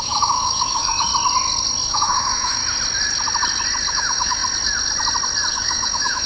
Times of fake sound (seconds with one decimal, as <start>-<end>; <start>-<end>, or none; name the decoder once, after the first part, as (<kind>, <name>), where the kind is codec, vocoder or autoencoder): 0.0-1.1 (autoencoder, DAC-VAE); 1.9-2.6; 3.9-4.4; 5.5-6.3